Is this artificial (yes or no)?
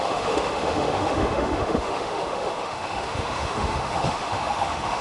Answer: yes